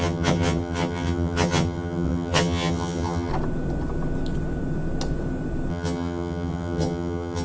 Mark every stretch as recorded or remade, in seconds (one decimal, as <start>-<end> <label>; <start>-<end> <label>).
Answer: 0.0-3.3 remade; 3.3-5.7 recorded; 5.7-7.4 remade